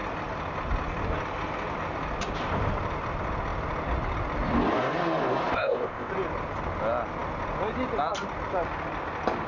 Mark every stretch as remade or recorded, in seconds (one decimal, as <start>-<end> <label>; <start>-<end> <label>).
0.0-5.5 recorded; 5.5-6.1 remade; 6.1-9.5 recorded